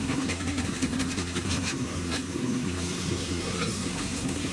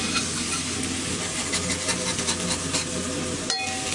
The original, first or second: second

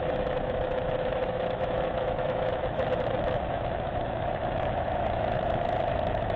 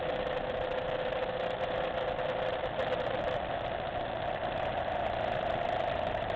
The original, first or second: second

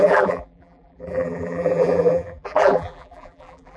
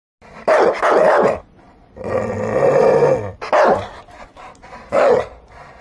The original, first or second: second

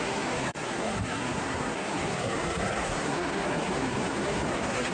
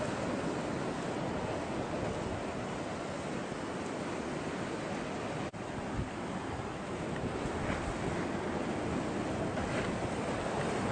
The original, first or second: second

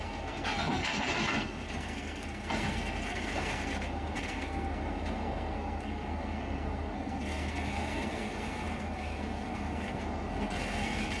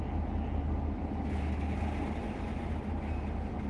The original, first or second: second